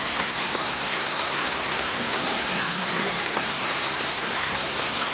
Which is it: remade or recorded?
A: remade